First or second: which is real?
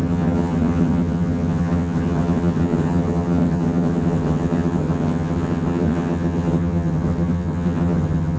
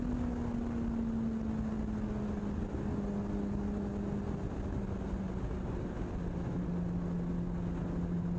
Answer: second